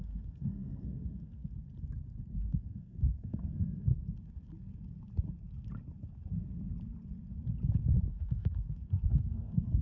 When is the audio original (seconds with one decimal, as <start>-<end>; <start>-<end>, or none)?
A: 1.4-2.4; 3.9-8.1